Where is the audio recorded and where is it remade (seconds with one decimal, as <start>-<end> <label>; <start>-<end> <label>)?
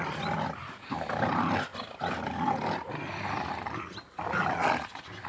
0.0-5.3 recorded